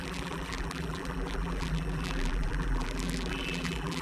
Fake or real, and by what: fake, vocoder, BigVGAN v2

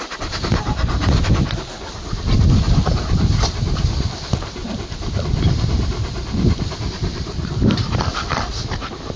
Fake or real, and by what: fake, vocoder, BigVGAN v2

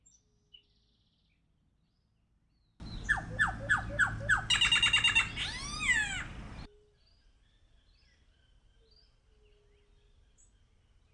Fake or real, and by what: real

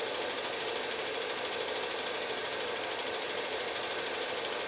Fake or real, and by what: real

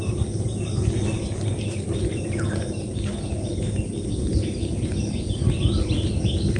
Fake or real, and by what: real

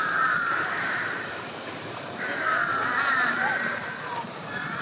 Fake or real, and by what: fake, vocoder, BigVGAN v2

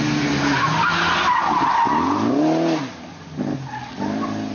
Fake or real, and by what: real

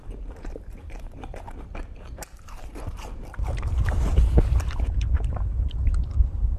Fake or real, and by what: fake, vocoder, BigVGAN v2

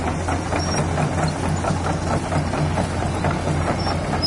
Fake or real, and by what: real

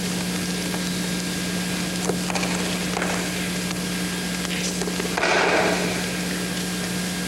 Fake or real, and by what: real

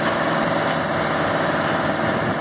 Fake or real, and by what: real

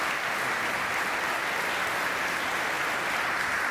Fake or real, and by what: real